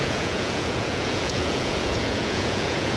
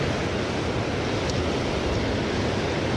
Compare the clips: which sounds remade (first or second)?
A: first